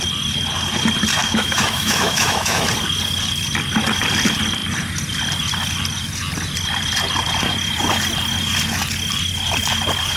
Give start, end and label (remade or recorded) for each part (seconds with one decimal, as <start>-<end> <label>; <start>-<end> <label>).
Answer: 0.0-1.2 recorded; 1.2-2.6 remade; 2.6-10.2 recorded